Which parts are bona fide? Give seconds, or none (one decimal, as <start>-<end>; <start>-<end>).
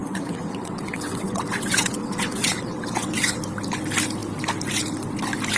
3.4-5.6